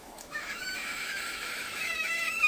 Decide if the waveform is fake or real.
fake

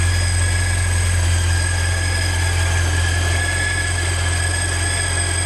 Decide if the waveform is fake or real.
real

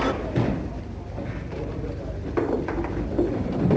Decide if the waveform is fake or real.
real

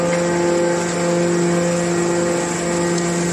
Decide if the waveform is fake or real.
real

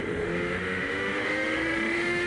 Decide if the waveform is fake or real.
fake